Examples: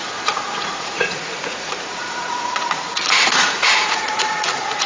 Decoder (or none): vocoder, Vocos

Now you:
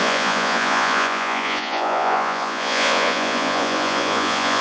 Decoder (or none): vocoder, Vocos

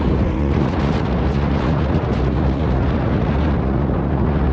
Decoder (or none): vocoder, Vocos